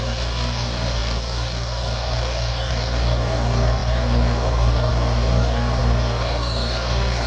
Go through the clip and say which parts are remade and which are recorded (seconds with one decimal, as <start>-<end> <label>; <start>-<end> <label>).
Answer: 0.0-7.3 remade